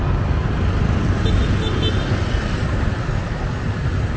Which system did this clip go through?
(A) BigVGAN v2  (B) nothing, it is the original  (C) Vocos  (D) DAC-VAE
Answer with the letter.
B